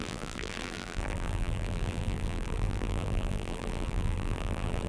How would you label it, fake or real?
fake